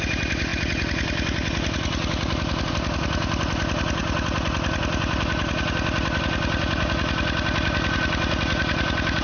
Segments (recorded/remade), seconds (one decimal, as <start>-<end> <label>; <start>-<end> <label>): 0.0-9.2 recorded